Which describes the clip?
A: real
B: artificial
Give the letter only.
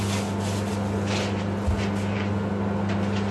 A